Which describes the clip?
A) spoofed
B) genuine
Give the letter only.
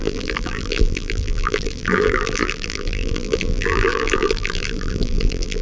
A